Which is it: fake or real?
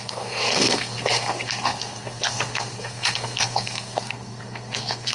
fake